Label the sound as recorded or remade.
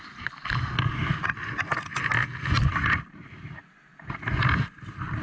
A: recorded